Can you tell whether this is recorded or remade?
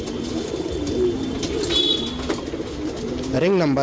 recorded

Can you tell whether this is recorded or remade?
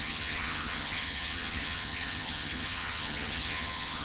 remade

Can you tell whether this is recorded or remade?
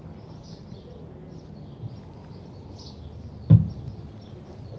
recorded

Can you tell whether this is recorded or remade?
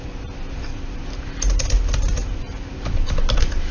recorded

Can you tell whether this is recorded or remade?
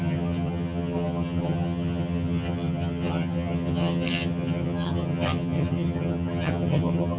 remade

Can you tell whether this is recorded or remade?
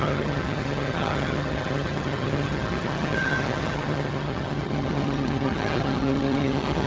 remade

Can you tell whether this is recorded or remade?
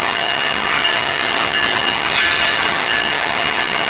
remade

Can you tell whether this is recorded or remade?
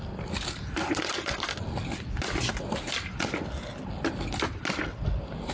recorded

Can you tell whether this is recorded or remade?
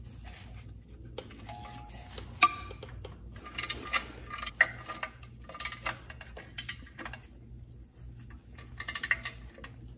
recorded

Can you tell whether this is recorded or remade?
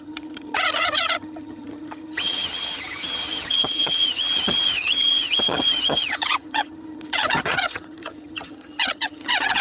remade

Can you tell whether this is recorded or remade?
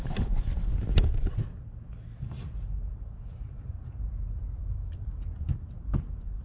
recorded